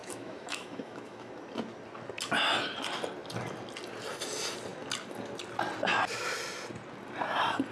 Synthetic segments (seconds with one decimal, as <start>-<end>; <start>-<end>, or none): 0.0-1.3